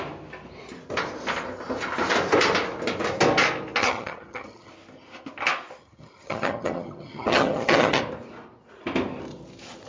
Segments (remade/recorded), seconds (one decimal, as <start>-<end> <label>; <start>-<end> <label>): 0.0-3.8 recorded; 3.8-4.7 remade; 4.7-5.8 recorded; 5.8-8.0 remade; 8.0-9.9 recorded